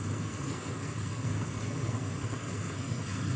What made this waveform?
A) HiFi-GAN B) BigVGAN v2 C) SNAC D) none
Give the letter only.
C